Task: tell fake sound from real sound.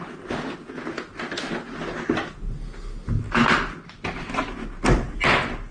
real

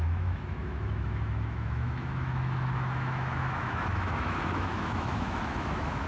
fake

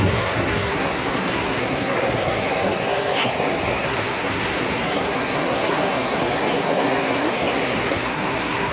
fake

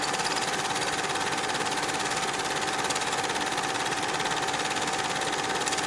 real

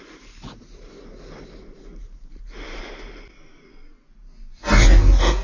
real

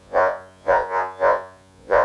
fake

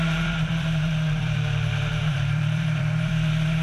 fake